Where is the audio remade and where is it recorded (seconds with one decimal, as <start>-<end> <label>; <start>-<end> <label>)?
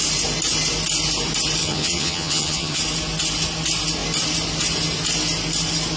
0.0-1.6 recorded; 1.6-2.8 remade; 2.8-6.0 recorded